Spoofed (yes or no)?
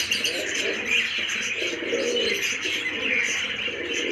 no